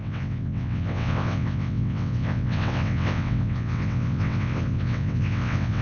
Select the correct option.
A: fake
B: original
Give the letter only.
A